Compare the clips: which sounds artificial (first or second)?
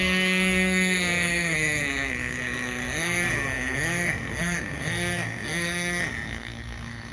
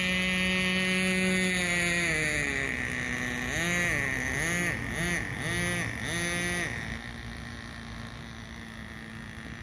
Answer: first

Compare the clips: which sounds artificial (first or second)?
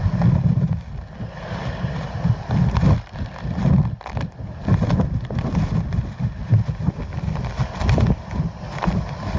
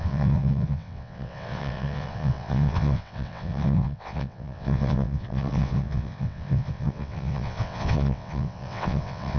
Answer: second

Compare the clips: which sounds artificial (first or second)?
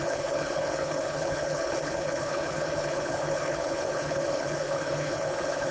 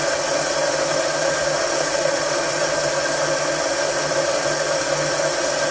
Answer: first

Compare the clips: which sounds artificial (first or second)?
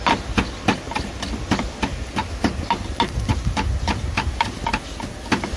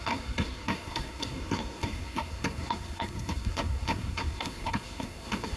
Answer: second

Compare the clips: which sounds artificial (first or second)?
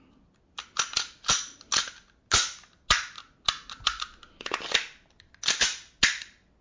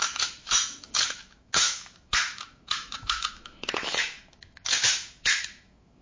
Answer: second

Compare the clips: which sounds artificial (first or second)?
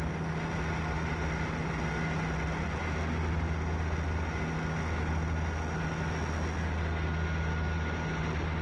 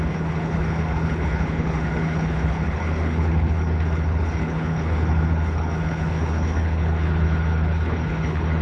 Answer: second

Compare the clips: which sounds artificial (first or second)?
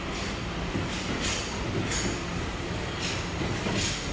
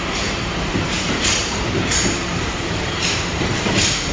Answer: second